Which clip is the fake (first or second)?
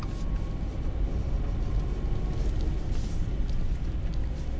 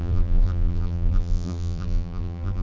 second